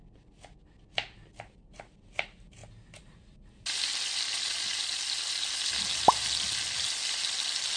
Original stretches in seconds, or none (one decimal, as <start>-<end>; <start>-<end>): 0.0-7.8